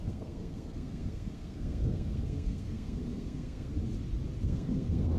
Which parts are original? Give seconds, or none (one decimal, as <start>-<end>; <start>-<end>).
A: 3.7-4.4